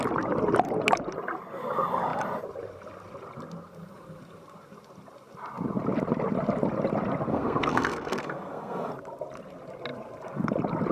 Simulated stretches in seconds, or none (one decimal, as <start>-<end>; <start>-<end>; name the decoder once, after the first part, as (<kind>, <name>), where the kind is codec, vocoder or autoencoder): 7.3-8.9 (codec, SNAC)